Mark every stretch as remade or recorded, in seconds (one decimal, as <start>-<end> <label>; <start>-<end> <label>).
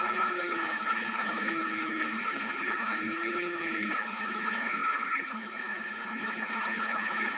0.0-7.4 remade